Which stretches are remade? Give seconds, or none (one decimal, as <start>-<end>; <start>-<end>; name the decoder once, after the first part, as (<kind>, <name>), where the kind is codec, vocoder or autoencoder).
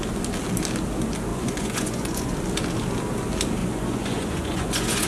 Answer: 1.3-2.3 (vocoder, Vocos); 3.6-5.1